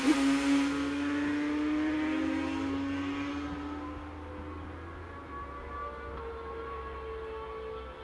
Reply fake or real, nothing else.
real